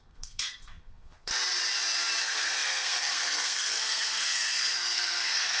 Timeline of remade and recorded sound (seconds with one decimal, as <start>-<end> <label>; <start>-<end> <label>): 0.0-1.3 remade; 1.3-2.2 recorded; 2.2-5.6 remade